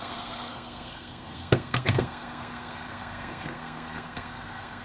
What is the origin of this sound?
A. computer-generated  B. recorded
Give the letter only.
A